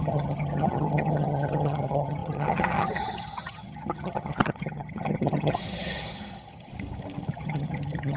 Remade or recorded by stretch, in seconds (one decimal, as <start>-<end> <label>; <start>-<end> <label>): 0.0-6.7 remade; 6.7-7.3 recorded; 7.3-8.2 remade